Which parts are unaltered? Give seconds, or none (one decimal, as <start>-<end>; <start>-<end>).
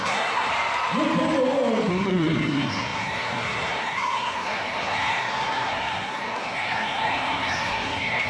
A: 0.5-1.9